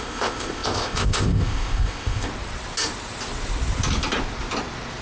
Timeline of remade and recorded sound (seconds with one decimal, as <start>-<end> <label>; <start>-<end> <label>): 0.0-2.3 remade; 2.3-5.0 recorded